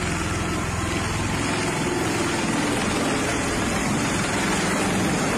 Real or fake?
real